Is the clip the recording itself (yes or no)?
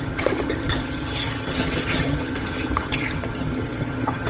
no